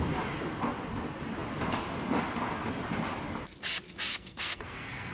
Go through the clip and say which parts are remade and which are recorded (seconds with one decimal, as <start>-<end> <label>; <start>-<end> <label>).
0.0-4.1 recorded; 4.1-5.1 remade